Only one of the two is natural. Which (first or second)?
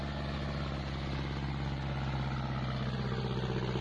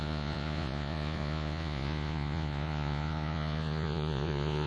first